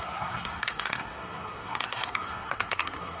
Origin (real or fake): fake